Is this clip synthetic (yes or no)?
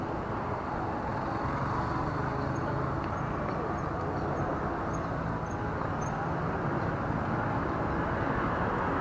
no